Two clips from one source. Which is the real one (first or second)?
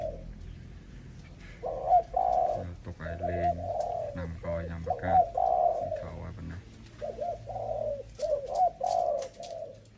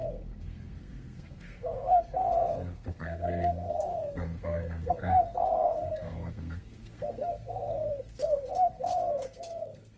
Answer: first